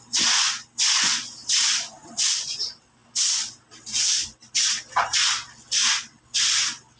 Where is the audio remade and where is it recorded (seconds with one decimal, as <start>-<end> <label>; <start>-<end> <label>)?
0.0-7.0 recorded